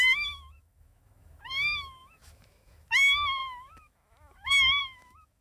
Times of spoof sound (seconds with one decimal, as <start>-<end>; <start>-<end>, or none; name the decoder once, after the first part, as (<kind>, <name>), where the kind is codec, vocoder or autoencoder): 0.0-5.4 (autoencoder, DAC-VAE)